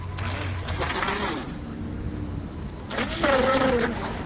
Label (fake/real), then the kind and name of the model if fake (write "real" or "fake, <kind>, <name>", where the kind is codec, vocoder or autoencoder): real